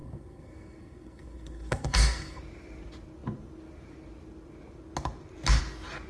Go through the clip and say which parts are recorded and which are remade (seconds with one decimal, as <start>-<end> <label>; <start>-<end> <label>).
0.0-2.4 remade; 2.4-6.1 recorded